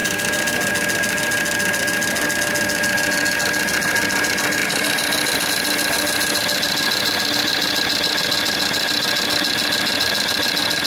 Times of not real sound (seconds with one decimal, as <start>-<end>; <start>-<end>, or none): none